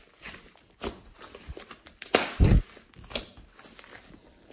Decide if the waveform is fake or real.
real